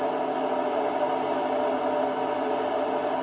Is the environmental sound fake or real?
real